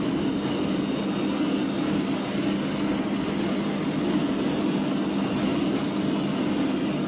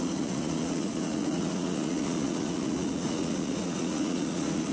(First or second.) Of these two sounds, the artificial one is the second